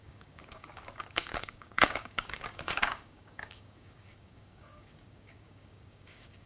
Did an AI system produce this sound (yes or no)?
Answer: yes